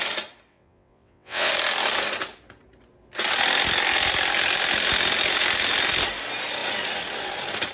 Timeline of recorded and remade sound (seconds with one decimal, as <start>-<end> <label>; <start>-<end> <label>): 0.0-0.5 recorded; 0.5-1.5 remade; 1.5-7.7 recorded

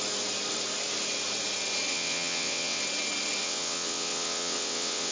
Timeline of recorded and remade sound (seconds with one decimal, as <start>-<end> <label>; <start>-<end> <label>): 0.0-1.9 recorded; 1.9-2.8 remade; 2.8-3.4 recorded; 3.4-5.1 remade

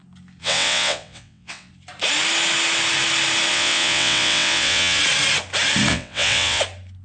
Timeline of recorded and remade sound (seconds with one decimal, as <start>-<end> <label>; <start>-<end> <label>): 0.0-0.4 recorded; 0.4-1.7 remade; 1.7-3.5 recorded; 3.5-5.0 remade; 5.0-5.9 recorded; 5.9-6.6 remade; 6.6-7.0 recorded